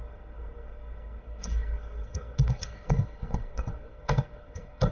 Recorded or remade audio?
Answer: remade